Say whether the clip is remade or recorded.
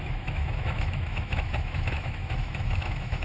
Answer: remade